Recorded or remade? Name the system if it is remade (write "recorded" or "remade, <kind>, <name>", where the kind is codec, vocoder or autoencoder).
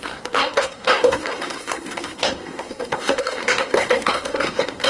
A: remade, codec, SNAC